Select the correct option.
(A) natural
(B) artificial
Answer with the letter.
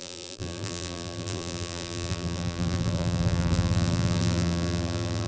B